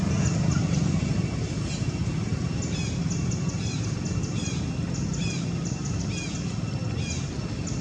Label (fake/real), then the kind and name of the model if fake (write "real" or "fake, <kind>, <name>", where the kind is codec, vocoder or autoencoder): real